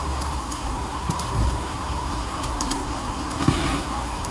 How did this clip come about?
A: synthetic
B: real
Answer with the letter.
A